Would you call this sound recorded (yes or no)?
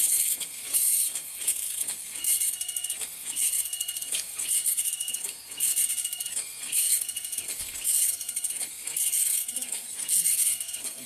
no